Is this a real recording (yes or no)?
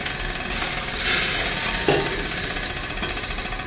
yes